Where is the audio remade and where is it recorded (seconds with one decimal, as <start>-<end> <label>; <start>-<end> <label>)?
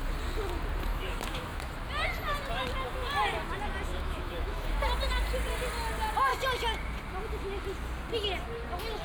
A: 0.0-0.9 recorded; 0.9-1.7 remade; 1.7-3.9 recorded; 3.9-4.7 remade; 4.7-9.0 recorded